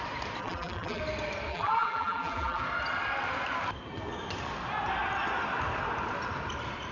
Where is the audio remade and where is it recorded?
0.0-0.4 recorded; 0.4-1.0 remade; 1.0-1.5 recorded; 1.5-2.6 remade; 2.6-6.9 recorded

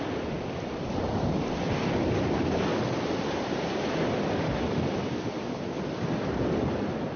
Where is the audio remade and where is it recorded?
0.0-2.7 recorded; 2.7-3.6 remade; 3.6-7.2 recorded

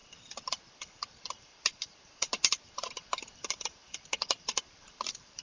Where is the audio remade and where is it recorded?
0.0-1.1 recorded; 1.1-3.8 remade; 3.8-4.6 recorded; 4.6-5.4 remade

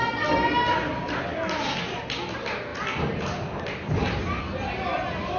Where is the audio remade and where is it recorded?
0.0-5.4 recorded

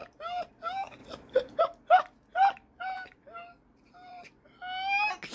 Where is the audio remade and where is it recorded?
0.0-1.0 recorded; 1.0-1.6 remade; 1.6-2.3 recorded; 2.3-4.3 remade; 4.3-5.3 recorded

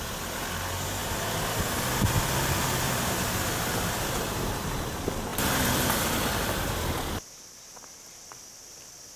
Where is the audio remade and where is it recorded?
0.0-9.2 recorded